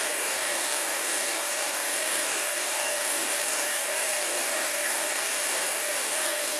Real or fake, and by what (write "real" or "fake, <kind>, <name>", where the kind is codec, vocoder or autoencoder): fake, codec, DAC